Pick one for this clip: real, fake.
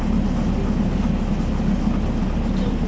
real